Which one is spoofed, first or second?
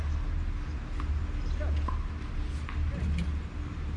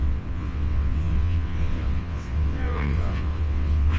second